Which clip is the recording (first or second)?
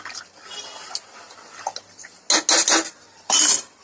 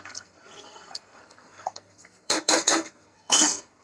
first